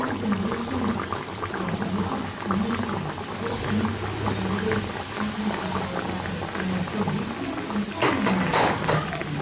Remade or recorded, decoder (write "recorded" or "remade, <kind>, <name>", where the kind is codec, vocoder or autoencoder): recorded